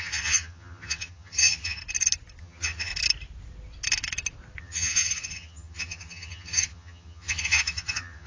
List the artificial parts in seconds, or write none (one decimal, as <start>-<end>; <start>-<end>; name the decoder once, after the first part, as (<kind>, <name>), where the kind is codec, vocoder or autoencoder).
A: 0.0-1.8 (vocoder, HiFi-GAN); 2.4-2.9; 4.6-8.3